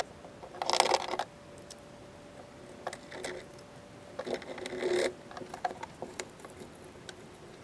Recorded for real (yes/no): yes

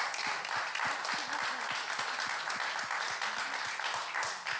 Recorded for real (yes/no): yes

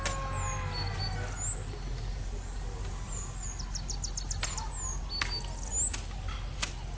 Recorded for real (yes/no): yes